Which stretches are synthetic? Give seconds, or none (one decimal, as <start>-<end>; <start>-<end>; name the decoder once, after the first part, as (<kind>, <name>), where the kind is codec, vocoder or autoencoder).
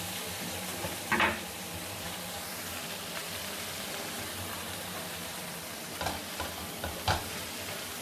0.0-0.7 (vocoder, BigVGAN v2); 1.5-3.2; 4.8-6.2; 7.2-8.0